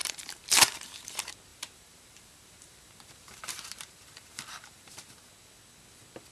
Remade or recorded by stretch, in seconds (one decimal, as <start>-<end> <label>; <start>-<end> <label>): 0.0-1.1 remade; 1.1-1.5 recorded; 1.5-5.3 remade; 5.3-6.3 recorded